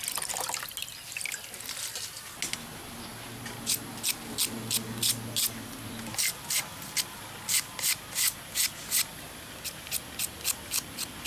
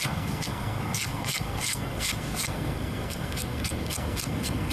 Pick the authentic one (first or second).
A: first